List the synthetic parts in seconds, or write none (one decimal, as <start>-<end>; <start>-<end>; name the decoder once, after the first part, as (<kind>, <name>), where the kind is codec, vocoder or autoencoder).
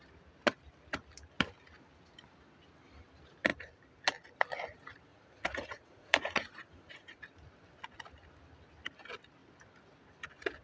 5.1-7.2 (vocoder, Vocos)